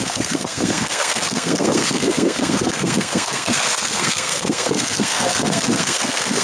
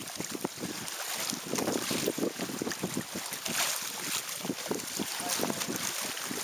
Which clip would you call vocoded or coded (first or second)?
first